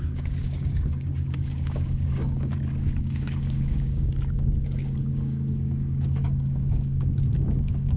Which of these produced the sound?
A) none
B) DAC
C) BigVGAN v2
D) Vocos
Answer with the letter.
B